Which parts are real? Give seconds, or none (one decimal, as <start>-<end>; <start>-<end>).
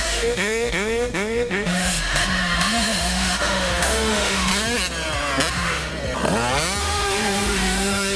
4.5-5.5; 5.9-6.8